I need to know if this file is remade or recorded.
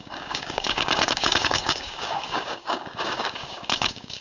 remade